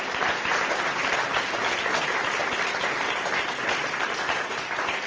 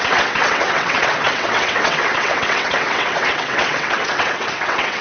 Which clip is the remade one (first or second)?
second